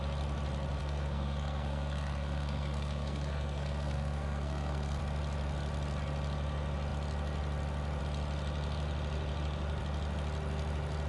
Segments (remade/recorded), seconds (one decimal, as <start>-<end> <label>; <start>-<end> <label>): 0.0-0.8 recorded; 0.8-5.0 remade; 5.0-11.1 recorded